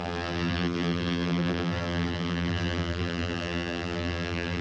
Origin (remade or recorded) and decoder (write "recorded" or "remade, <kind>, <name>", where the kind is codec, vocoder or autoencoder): remade, vocoder, BigVGAN v2